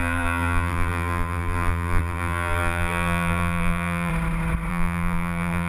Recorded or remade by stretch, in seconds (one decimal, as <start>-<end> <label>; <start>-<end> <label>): 0.0-4.1 remade; 4.1-4.7 recorded; 4.7-5.7 remade